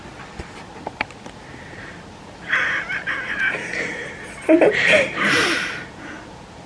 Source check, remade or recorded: recorded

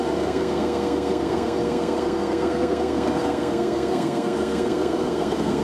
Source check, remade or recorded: remade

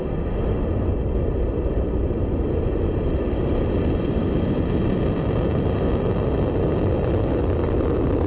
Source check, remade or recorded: recorded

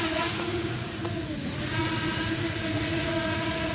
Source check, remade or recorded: remade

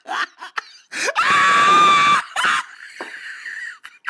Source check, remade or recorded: recorded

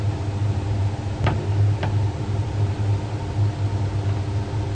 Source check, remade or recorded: recorded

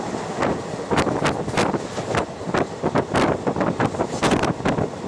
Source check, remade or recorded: recorded